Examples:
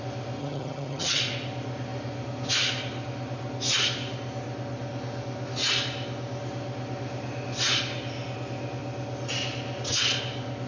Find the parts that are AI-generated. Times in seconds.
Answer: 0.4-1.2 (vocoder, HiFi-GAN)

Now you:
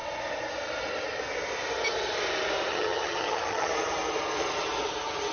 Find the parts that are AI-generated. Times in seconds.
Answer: 2.7-3.7 (vocoder, HiFi-GAN)

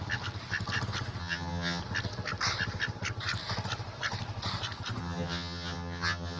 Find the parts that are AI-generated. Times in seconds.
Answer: 1.2-1.8 (vocoder, HiFi-GAN); 5.0-6.4

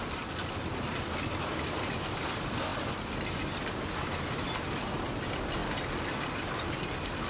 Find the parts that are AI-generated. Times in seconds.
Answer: none

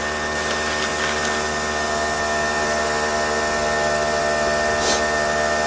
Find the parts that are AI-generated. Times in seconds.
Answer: none

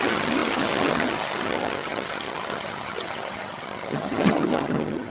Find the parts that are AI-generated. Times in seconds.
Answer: 0.0-5.1 (vocoder, HiFi-GAN)

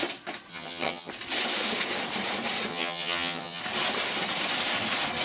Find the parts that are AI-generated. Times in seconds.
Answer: 0.5-1.1 (vocoder, HiFi-GAN); 2.7-3.6

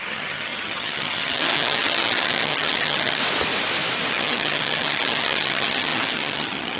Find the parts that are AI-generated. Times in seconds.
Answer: 0.0-3.2 (vocoder, HiFi-GAN); 4.1-6.8